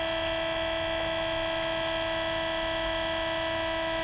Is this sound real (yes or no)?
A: yes